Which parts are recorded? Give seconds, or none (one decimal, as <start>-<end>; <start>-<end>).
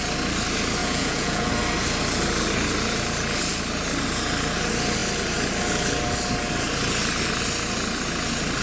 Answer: 0.0-0.8; 1.5-8.6